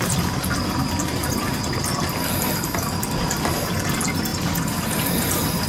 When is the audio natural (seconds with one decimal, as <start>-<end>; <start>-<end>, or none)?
0.0-1.2; 3.5-4.3; 5.3-5.7